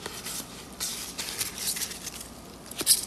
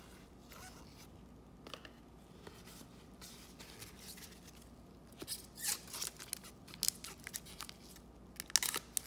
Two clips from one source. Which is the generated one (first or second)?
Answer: first